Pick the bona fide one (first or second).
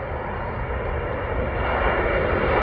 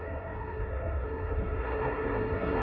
first